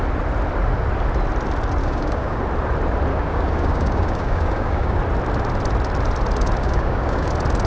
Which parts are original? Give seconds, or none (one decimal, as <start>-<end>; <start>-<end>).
0.0-1.8; 2.4-3.1; 5.0-6.6; 7.3-7.7